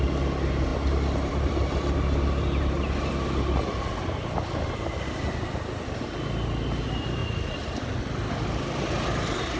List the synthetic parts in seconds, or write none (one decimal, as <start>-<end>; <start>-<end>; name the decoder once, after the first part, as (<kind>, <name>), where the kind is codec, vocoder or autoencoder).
none